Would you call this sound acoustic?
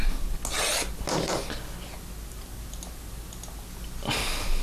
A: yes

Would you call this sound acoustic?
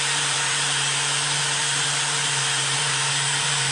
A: no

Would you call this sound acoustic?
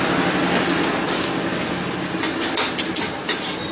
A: yes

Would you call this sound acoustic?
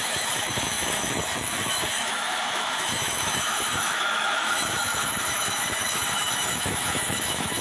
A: no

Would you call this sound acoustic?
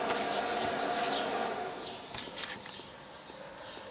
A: yes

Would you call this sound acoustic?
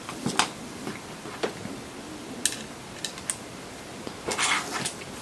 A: yes